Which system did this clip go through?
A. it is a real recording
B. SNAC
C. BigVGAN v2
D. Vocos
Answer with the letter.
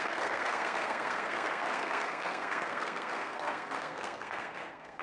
B